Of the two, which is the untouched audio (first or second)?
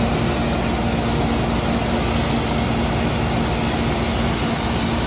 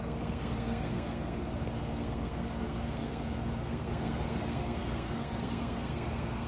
first